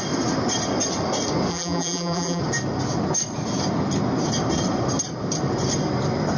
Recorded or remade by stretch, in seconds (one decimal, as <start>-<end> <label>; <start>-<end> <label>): 0.0-1.5 recorded; 1.5-2.4 remade; 2.4-6.4 recorded